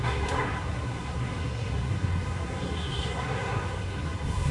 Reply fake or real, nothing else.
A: fake